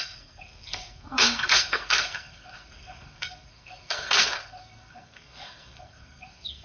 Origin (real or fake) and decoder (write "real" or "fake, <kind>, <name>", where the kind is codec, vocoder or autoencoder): fake, codec, SNAC